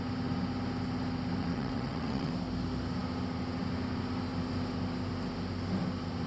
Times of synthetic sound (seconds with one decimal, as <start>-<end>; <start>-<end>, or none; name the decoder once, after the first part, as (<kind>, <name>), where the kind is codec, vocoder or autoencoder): 1.4-2.3 (vocoder, WaveNeXt)